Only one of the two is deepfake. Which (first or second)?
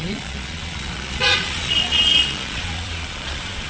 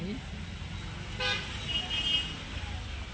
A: first